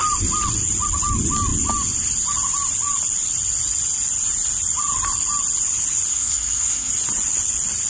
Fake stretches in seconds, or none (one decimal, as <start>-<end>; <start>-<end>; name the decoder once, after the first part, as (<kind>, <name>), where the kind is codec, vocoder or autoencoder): 6.1-6.9 (codec, SNAC)